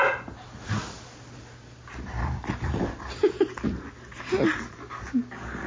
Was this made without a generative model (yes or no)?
yes